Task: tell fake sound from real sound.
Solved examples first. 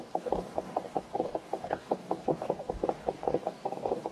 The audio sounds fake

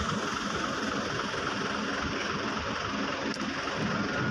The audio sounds real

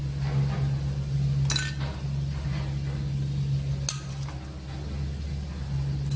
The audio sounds real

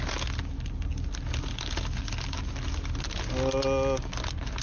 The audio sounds real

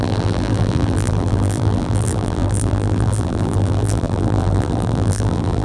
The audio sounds fake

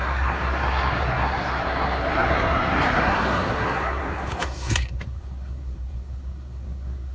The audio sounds fake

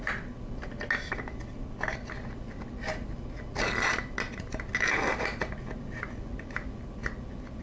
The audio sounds real